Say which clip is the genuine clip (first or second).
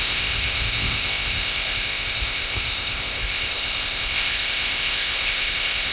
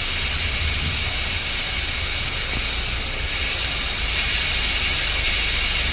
second